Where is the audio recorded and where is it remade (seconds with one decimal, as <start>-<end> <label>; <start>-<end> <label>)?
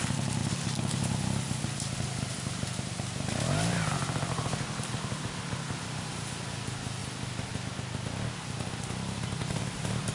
0.0-10.1 recorded